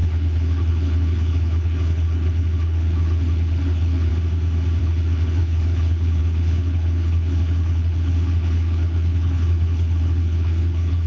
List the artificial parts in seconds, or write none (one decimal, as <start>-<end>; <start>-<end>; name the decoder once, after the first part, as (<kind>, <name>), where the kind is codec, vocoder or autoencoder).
0.0-4.1 (codec, HILCodec); 4.8-11.1